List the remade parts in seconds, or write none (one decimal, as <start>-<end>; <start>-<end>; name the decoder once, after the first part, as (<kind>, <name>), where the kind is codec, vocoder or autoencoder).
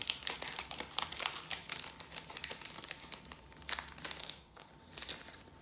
4.2-4.7 (codec, SNAC)